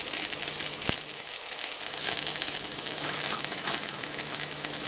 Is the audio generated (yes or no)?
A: yes